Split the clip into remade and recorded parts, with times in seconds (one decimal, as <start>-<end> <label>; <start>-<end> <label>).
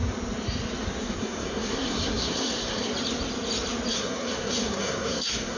0.0-1.0 recorded; 1.0-2.9 remade; 2.9-3.9 recorded; 3.9-5.6 remade